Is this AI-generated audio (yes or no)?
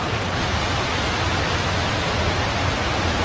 no